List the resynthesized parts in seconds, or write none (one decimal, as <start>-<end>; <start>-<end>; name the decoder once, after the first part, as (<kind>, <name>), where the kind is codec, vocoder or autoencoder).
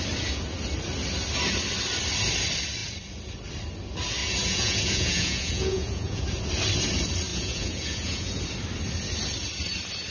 4.2-6.2 (vocoder, Vocos); 7.3-8.4